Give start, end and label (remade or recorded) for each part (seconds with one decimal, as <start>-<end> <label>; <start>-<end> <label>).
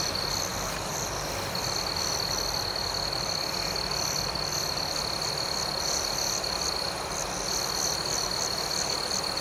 0.0-9.4 recorded